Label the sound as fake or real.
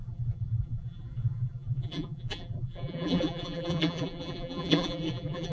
fake